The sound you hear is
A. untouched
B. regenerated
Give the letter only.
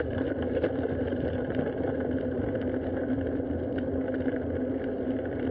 A